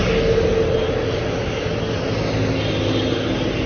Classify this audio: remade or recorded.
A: recorded